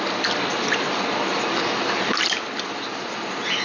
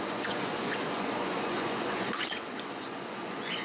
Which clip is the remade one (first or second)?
second